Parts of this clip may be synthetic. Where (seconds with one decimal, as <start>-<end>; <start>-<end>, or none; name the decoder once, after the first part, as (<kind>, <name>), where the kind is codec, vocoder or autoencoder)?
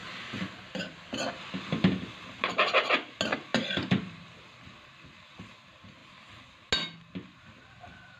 none